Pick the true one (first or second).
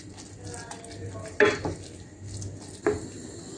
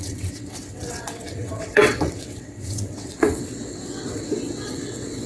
first